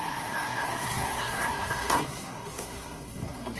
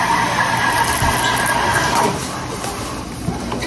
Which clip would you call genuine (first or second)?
second